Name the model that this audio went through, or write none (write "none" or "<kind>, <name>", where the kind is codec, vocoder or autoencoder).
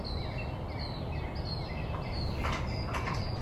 none